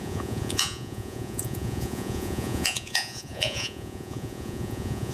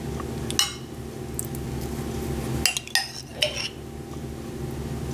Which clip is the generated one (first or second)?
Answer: first